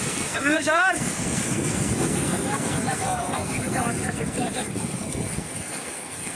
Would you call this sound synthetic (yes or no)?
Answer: yes